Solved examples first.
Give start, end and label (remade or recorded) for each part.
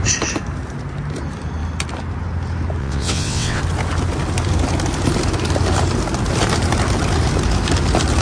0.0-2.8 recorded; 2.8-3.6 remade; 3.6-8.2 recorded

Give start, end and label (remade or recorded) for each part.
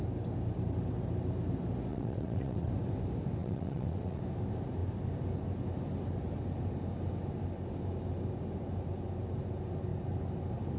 0.0-1.9 recorded; 1.9-2.7 remade; 2.7-3.4 recorded; 3.4-4.2 remade; 4.2-10.8 recorded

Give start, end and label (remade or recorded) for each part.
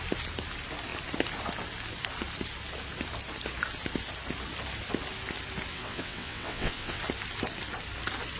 0.0-5.7 recorded; 5.7-7.0 remade; 7.0-8.4 recorded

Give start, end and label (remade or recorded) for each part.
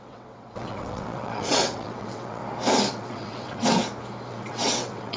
0.0-2.4 remade; 2.4-2.9 recorded; 2.9-3.8 remade; 3.8-4.3 recorded; 4.3-5.2 remade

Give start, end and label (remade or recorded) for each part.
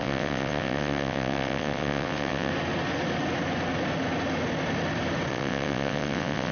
0.0-2.5 remade; 2.5-5.3 recorded; 5.3-6.5 remade